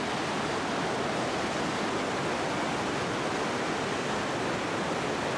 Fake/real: real